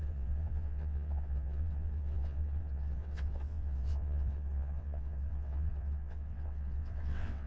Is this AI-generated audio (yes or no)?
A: yes